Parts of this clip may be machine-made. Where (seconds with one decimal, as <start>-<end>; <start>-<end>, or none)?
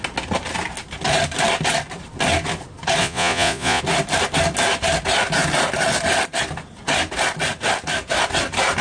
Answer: 3.0-3.8